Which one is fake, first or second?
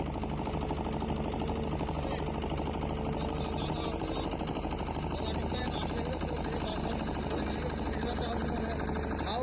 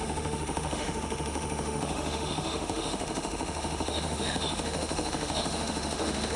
second